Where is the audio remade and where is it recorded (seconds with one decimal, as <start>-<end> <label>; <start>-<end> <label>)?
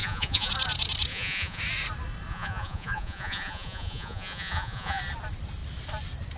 0.0-0.5 remade; 0.5-1.1 recorded; 1.1-1.6 remade; 1.6-2.3 recorded; 2.3-5.0 remade; 5.0-6.4 recorded